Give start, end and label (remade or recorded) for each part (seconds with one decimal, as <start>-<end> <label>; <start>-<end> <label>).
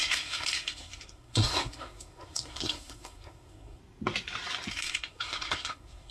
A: 0.0-3.8 remade; 3.8-4.7 recorded; 4.7-6.1 remade